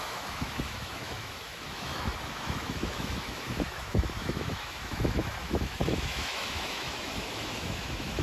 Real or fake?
fake